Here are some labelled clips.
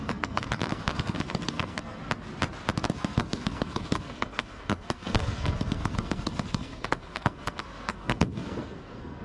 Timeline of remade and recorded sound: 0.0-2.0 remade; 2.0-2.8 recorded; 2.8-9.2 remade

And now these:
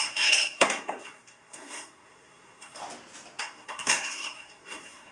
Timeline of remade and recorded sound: 0.0-2.8 remade; 2.8-3.4 recorded; 3.4-5.1 remade

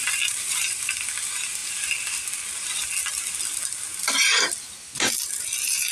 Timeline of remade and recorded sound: 0.0-5.9 recorded

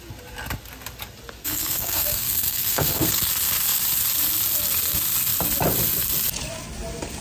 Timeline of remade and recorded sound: 0.0-1.4 recorded; 1.4-3.1 remade; 3.1-7.2 recorded